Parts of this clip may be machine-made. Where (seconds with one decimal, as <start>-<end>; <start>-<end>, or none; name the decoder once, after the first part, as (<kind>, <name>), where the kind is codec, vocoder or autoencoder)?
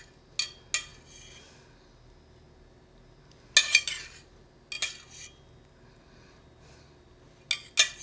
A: none